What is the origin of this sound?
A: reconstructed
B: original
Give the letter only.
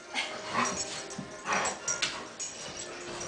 B